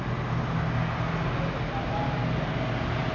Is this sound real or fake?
real